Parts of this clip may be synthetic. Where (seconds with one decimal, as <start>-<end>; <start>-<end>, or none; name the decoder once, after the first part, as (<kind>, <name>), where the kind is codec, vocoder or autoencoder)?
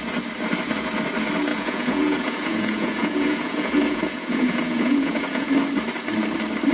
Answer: 1.5-5.5 (vocoder, Vocos)